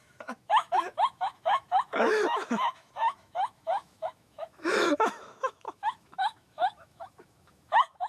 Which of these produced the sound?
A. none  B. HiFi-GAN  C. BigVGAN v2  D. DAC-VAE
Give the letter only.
D